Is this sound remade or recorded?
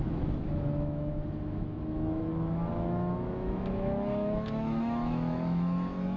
remade